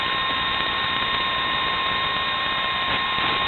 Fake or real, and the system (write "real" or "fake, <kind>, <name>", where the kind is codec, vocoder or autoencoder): fake, vocoder, BigVGAN v2